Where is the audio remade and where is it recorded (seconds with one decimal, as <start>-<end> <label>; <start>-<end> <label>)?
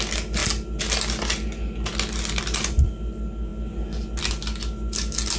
0.0-5.4 recorded